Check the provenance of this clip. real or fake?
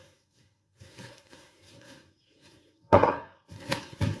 fake